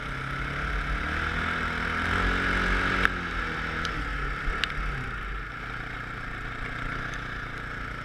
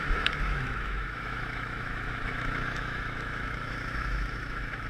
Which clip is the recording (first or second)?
first